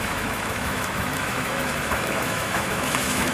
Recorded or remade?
remade